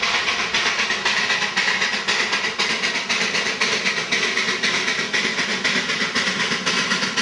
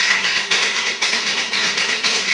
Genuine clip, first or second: first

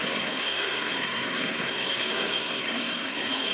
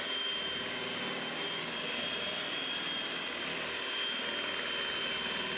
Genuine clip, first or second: second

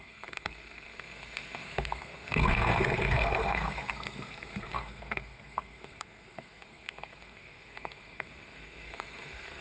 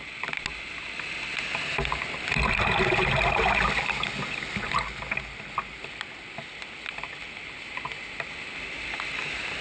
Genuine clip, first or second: second